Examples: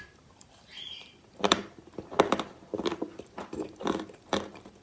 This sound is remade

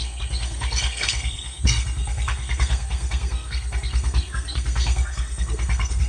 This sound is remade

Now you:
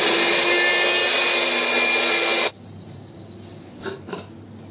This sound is recorded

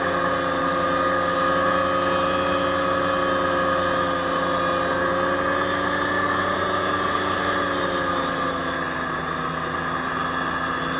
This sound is recorded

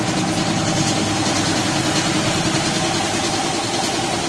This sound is recorded